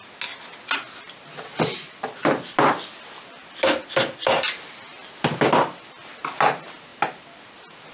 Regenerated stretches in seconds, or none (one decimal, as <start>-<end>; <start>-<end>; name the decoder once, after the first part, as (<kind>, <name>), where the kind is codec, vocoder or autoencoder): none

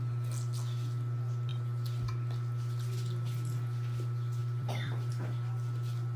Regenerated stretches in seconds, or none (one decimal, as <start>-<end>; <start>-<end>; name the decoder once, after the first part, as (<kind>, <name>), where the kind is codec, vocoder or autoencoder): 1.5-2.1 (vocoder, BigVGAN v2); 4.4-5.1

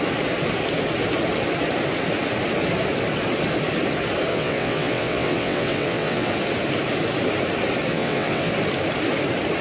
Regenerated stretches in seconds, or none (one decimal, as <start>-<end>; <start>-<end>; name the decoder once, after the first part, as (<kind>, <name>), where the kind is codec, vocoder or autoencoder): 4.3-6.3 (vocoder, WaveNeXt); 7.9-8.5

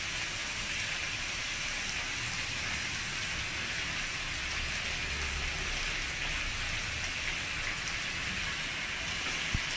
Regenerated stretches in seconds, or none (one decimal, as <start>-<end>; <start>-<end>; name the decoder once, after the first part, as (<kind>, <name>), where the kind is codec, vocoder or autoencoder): 8.2-9.0 (vocoder, BigVGAN v2)